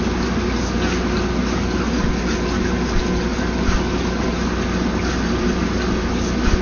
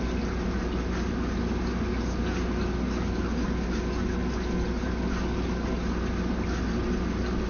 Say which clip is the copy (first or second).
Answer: first